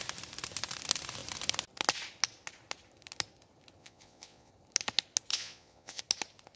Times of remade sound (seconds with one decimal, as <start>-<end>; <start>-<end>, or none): 3.8-4.5; 5.3-6.0